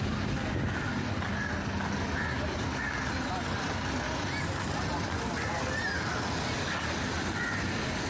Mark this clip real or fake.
real